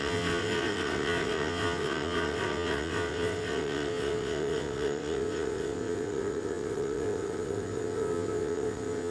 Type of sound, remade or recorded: remade